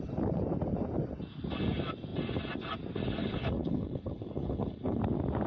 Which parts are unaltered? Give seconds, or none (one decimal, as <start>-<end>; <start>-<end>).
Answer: 0.0-3.2; 5.0-5.5